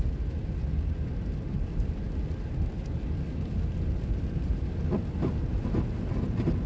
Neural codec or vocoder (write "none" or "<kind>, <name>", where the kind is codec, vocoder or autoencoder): none